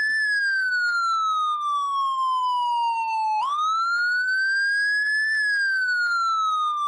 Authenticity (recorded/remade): recorded